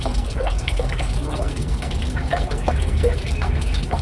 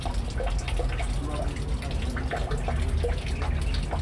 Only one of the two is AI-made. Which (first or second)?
first